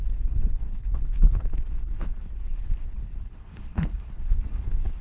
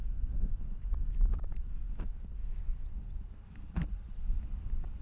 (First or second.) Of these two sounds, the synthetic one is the first